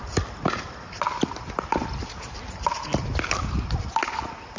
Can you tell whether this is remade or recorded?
recorded